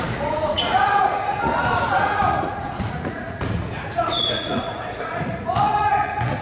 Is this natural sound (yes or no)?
no